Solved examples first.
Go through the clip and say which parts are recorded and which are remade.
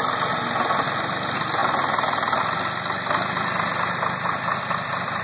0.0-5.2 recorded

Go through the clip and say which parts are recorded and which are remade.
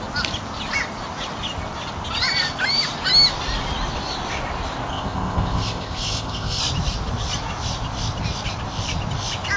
0.0-4.9 recorded; 4.9-6.6 remade; 6.6-9.6 recorded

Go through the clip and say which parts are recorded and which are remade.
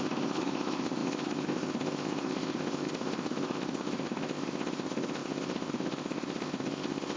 0.0-7.2 remade